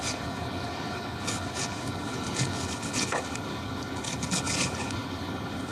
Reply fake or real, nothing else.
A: fake